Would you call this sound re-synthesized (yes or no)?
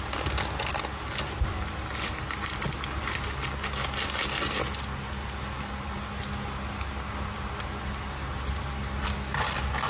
no